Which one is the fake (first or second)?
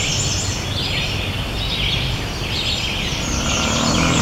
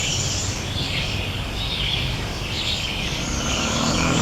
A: second